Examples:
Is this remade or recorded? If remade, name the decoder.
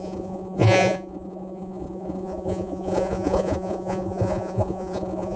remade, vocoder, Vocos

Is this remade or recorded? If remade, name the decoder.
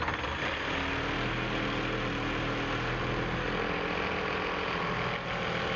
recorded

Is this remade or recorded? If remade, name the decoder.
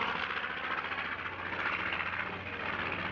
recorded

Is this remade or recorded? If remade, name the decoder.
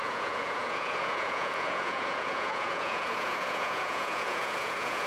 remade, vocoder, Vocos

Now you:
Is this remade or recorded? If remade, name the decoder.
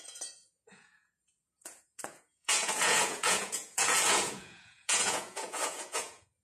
remade, vocoder, Vocos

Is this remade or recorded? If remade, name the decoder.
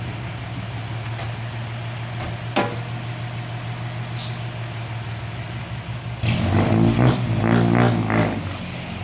recorded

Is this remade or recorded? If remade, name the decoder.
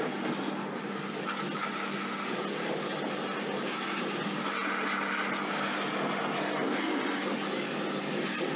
recorded